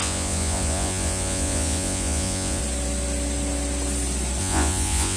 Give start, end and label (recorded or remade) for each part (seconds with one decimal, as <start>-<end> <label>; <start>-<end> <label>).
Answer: 0.0-2.6 remade; 2.6-4.4 recorded; 4.4-5.2 remade